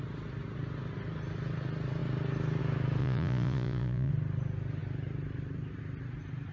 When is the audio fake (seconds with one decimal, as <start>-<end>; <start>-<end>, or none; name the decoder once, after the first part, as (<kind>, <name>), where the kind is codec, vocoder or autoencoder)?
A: 3.0-4.1 (vocoder, Vocos)